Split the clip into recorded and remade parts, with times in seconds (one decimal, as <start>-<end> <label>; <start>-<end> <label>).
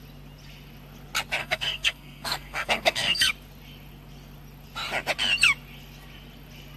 0.0-1.4 recorded; 1.4-3.3 remade; 3.3-6.8 recorded